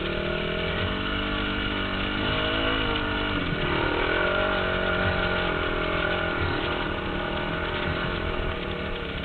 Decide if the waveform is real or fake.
real